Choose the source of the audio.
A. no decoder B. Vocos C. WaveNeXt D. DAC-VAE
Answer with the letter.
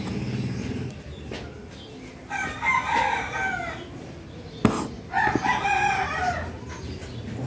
A